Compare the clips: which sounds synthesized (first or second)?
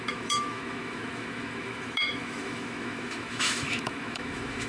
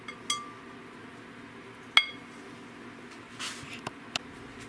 first